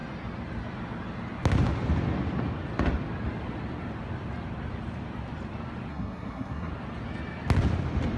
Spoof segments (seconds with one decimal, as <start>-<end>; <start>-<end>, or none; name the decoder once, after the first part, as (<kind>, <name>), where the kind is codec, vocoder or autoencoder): 5.9-6.7 (codec, SNAC)

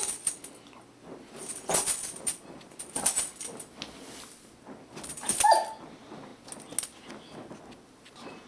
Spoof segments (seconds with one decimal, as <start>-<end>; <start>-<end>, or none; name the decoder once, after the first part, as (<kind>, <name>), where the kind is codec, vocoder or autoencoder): none

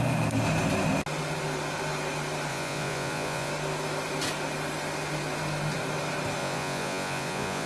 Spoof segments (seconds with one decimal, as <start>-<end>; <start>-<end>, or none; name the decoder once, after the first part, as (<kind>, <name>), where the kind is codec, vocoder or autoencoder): 2.5-3.5 (vocoder, Vocos); 6.4-7.7

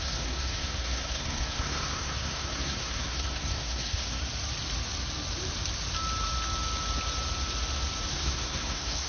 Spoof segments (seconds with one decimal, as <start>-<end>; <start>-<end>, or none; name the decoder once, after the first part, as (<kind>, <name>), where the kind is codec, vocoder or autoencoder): 0.0-4.2 (codec, SNAC); 8.1-9.1

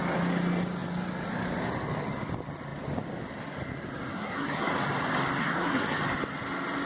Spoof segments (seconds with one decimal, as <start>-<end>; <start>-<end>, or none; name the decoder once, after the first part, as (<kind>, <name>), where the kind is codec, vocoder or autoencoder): 4.1-4.7 (codec, SNAC); 5.4-6.0